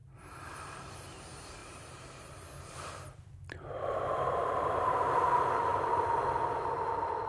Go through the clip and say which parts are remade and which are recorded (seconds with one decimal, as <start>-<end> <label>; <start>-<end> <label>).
0.0-0.9 remade; 0.9-1.6 recorded; 1.6-2.3 remade; 2.3-7.3 recorded